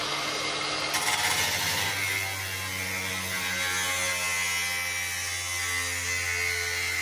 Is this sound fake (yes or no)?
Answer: no